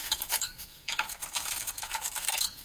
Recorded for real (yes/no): no